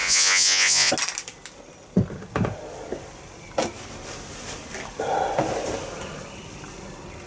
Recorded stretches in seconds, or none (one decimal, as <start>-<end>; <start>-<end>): 0.9-7.3